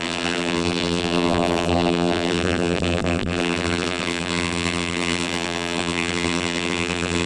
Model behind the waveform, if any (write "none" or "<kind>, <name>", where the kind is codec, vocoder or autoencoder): vocoder, BigVGAN v2